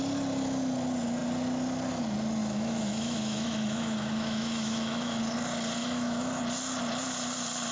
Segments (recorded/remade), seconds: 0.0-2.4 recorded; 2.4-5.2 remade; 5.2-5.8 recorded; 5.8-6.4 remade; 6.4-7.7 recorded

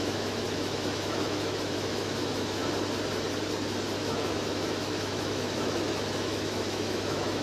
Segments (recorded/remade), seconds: 0.0-2.6 remade; 2.6-4.0 recorded; 4.0-7.4 remade